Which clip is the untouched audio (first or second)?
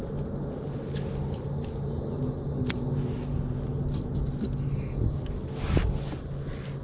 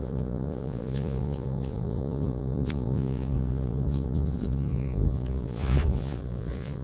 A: first